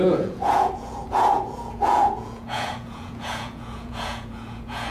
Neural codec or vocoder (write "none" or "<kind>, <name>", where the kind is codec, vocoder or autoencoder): vocoder, Vocos